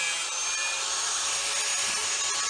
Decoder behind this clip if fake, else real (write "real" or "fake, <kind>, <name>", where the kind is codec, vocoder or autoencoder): real